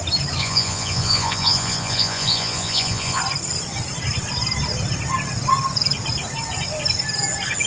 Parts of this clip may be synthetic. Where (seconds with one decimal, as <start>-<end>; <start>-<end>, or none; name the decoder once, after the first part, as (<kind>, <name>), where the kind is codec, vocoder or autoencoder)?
0.4-3.2 (vocoder, Vocos)